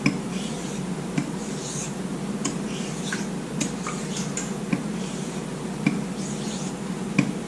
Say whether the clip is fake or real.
real